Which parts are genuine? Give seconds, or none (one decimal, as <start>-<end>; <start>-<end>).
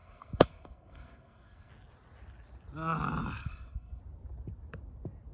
1.7-3.4; 4.0-5.3